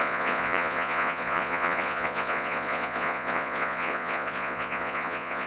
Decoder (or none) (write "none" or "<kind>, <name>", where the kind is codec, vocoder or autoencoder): vocoder, Vocos